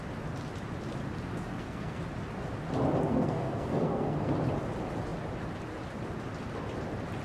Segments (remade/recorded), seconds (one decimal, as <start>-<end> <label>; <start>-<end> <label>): 0.0-1.3 recorded; 1.3-2.0 remade; 2.0-3.1 recorded; 3.1-4.3 remade; 4.3-7.2 recorded